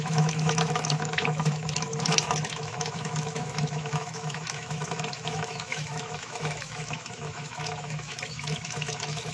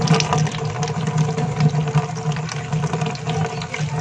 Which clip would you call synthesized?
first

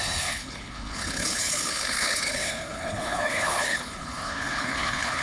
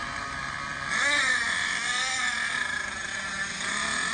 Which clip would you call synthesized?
first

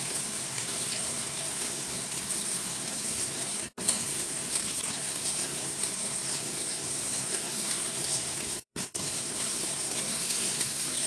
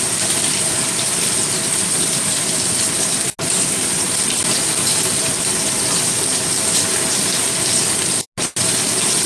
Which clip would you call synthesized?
first